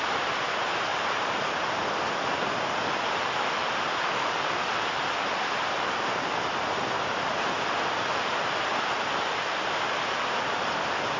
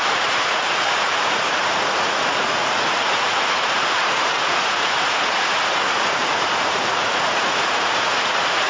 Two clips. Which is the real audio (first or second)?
first